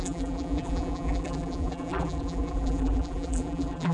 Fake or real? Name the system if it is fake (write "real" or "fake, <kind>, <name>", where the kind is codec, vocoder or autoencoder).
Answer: fake, vocoder, BigVGAN v2